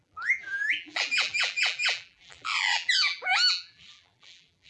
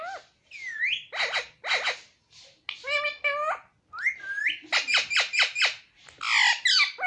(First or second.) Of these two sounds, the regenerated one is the first